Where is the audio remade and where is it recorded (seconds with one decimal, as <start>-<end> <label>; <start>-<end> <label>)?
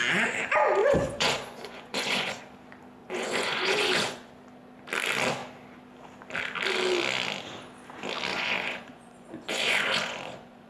0.0-0.8 recorded; 0.8-2.4 remade; 2.4-3.0 recorded; 3.0-4.3 remade; 4.3-8.3 recorded; 8.3-10.7 remade